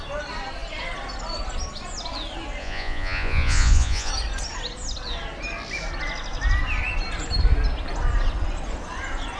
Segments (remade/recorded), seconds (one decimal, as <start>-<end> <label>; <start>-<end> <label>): 0.0-2.6 recorded; 2.6-4.1 remade; 4.1-9.4 recorded